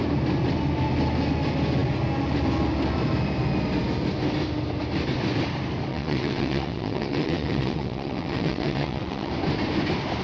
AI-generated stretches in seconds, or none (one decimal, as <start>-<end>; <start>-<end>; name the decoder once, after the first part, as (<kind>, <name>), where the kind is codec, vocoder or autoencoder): 5.9-9.3 (vocoder, WaveNeXt)